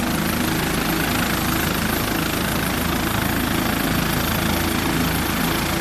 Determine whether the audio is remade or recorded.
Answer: recorded